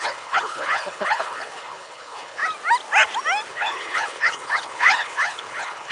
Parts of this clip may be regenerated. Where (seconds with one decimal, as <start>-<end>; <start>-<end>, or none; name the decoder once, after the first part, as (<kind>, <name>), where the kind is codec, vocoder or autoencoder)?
0.0-2.4 (codec, HILCodec); 3.5-5.9